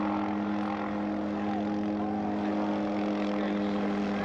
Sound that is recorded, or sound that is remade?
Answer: recorded